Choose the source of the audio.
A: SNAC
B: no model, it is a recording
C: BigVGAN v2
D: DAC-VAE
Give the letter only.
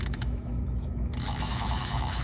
D